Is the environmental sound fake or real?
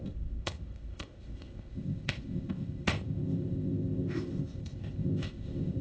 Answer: fake